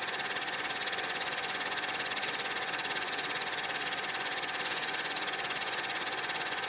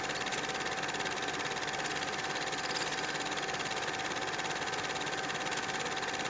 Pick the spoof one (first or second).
first